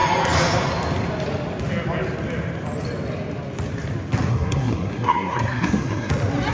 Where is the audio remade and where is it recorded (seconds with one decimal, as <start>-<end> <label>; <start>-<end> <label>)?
0.0-4.3 recorded; 4.3-6.1 remade; 6.1-6.5 recorded